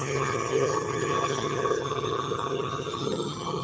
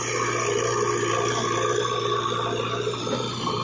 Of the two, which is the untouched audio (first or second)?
second